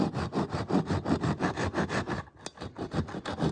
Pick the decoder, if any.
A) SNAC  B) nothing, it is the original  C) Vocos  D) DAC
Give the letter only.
B